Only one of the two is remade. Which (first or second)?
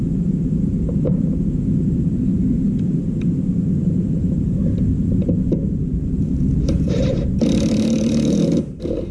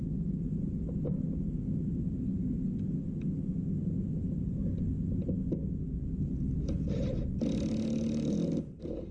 first